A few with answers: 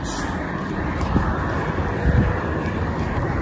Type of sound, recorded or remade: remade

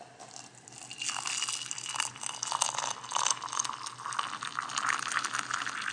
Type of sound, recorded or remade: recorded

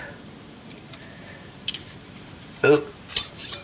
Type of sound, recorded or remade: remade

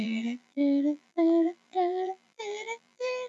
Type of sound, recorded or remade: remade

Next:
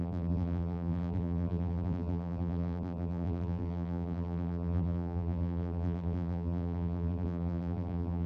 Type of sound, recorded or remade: remade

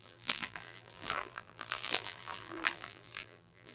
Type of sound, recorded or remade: remade